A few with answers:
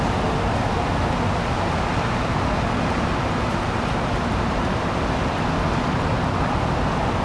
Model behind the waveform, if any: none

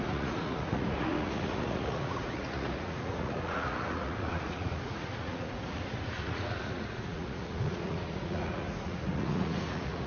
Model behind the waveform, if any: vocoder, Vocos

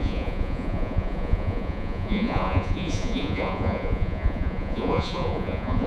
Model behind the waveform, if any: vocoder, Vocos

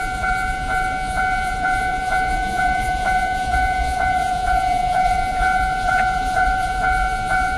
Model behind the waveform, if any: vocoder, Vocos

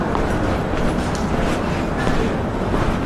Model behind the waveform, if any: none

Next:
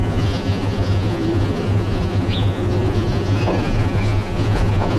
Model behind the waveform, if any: vocoder, Vocos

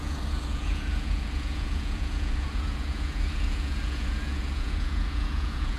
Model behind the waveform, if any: vocoder, Vocos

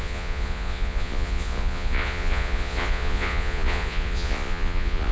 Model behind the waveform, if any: vocoder, Vocos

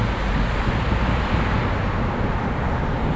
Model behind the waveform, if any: none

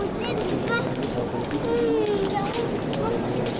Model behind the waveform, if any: none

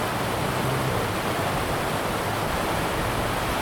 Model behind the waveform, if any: none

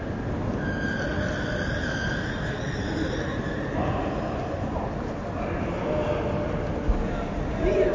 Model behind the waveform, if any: none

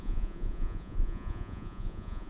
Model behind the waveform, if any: vocoder, Vocos